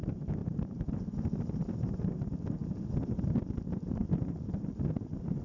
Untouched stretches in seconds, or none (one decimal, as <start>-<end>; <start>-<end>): 0.0-0.4; 0.9-5.4

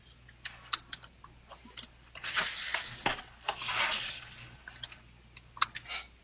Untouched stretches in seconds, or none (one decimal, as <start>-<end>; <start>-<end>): 0.0-6.2

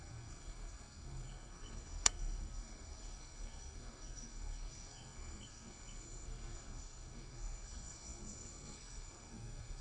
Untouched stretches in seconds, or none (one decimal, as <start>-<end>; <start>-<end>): none

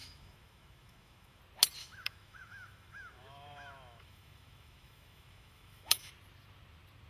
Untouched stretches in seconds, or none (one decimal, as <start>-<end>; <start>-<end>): 1.4-1.8; 6.1-7.1